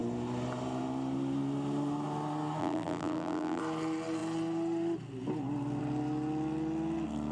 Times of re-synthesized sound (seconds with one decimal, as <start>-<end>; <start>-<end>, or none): 2.6-3.6